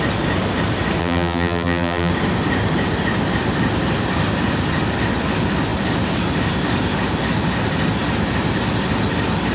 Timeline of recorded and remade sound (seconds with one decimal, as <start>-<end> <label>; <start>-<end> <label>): 0.0-1.0 recorded; 1.0-2.1 remade; 2.1-9.5 recorded